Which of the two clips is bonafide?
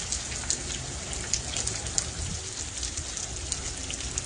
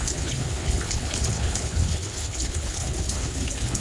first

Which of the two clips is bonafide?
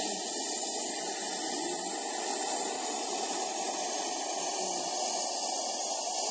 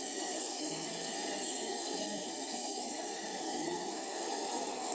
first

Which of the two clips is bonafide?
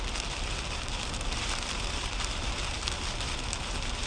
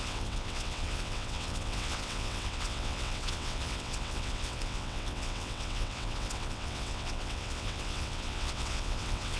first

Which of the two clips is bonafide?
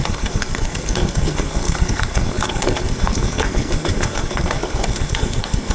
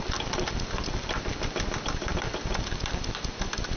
second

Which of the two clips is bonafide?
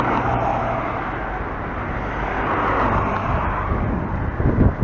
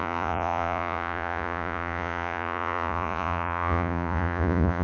first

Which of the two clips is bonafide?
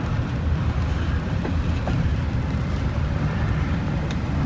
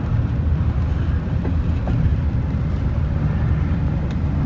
second